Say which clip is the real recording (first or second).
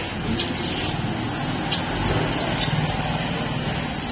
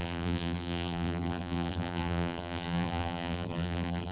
first